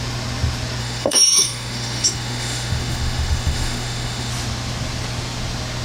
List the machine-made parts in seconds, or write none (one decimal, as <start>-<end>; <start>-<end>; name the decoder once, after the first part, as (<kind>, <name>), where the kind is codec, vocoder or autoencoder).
0.8-4.3 (autoencoder, DAC-VAE)